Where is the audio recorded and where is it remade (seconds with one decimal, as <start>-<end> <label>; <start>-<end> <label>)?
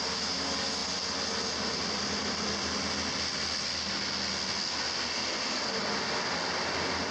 0.0-7.1 recorded